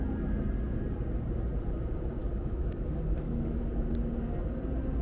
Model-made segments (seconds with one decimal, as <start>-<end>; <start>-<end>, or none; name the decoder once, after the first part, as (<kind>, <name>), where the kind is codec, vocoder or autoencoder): 2.2-3.6 (codec, DAC)